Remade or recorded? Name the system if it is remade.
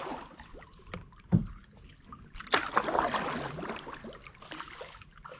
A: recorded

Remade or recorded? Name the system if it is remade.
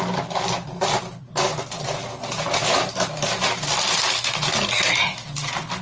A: recorded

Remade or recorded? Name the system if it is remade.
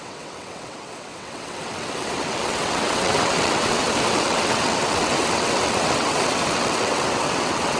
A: remade, vocoder, WaveNeXt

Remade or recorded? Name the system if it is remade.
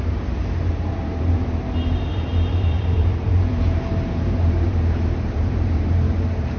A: remade, vocoder, BigVGAN v2